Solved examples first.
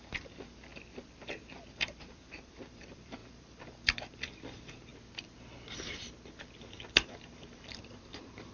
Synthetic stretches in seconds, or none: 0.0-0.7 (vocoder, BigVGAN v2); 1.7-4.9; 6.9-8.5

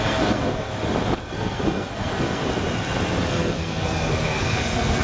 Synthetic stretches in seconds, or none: 0.0-0.7 (codec, SNAC); 1.2-2.4; 3.3-5.0

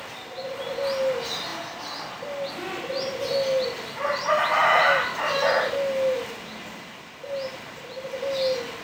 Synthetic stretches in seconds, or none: none

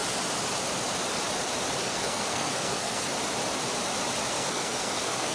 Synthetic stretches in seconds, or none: 1.8-3.1 (codec, SNAC); 4.3-5.3